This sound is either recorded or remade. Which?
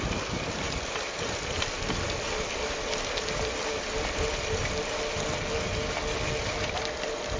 recorded